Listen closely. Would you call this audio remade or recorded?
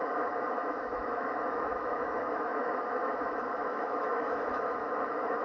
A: remade